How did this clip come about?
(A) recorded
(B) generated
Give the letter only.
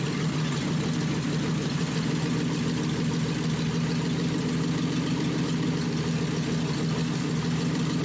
A